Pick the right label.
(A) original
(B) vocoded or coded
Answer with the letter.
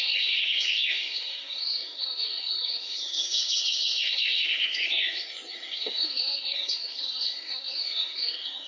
B